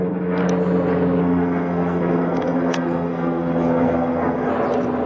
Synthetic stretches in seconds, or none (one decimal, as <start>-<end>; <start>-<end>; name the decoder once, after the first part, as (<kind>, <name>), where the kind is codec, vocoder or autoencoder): 0.0-0.4 (codec, SNAC); 1.2-4.5